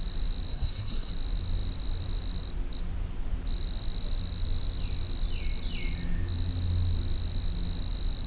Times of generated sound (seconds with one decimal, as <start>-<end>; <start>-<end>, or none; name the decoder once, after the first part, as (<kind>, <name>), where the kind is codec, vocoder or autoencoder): 0.5-1.1 (codec, SNAC)